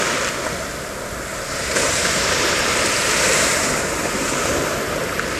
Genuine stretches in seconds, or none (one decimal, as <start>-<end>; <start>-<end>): 0.0-1.3; 4.5-5.4